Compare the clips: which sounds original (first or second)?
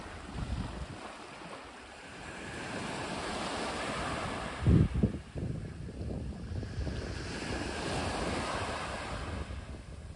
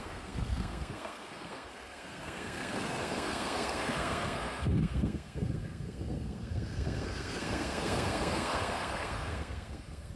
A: first